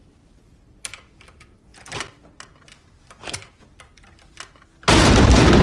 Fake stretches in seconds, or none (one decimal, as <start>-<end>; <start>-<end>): 0.0-1.7; 5.1-5.6